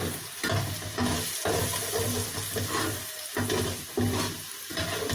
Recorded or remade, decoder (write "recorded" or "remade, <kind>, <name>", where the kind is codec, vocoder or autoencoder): recorded